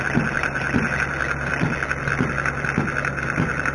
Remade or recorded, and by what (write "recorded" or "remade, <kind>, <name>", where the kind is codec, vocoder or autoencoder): recorded